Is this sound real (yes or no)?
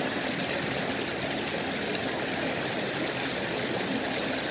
yes